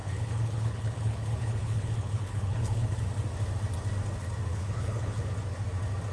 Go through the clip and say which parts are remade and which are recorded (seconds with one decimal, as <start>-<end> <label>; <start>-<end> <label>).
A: 0.0-3.0 remade; 3.0-4.5 recorded; 4.5-5.3 remade; 5.3-6.1 recorded